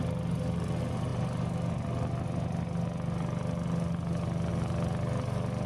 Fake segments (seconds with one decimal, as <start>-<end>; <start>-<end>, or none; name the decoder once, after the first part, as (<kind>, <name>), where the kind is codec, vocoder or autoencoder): none